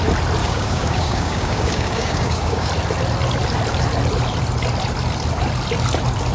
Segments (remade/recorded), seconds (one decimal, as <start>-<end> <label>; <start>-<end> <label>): 0.0-0.4 recorded; 0.4-2.7 remade; 2.7-6.3 recorded